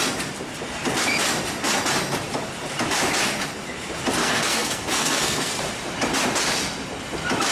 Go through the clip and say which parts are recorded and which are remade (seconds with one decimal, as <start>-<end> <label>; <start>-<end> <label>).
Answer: 0.0-4.2 recorded; 4.2-5.6 remade; 5.6-7.5 recorded